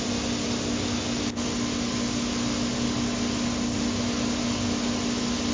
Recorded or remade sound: recorded